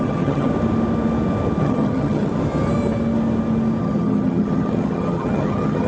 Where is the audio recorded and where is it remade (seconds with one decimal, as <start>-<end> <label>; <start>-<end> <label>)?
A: 0.0-0.5 remade; 0.5-1.6 recorded; 1.6-2.3 remade; 2.3-3.8 recorded; 3.8-5.9 remade